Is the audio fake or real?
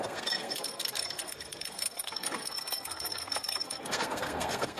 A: fake